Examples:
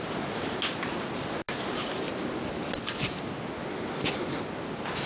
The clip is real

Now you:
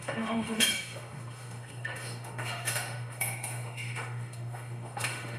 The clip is fake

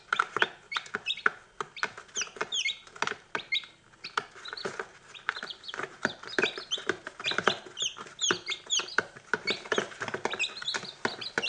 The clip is real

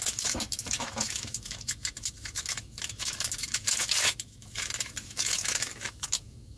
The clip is fake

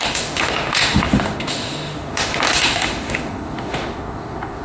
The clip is fake